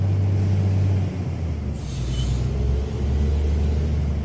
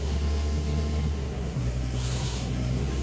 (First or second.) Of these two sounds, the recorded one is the first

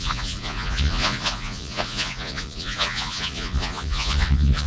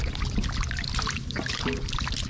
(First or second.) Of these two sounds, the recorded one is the second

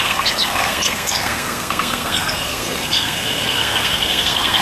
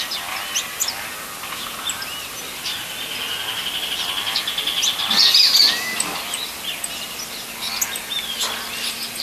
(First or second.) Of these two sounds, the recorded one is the second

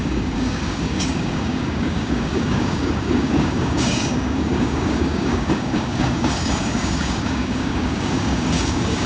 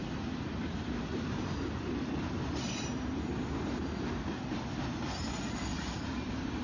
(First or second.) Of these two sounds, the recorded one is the second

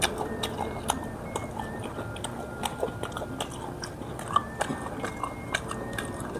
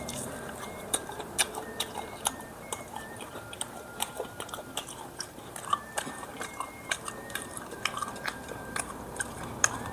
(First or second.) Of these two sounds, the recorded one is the first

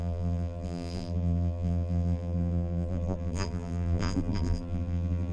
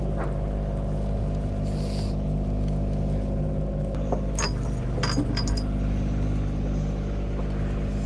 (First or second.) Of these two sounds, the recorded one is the second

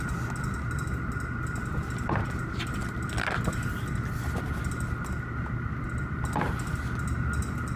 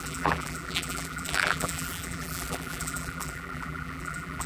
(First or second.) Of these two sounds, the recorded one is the first